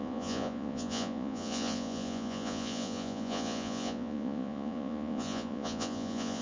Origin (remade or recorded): remade